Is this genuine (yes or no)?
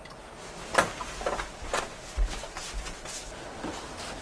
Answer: yes